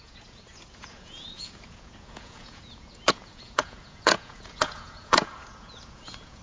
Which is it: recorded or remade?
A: remade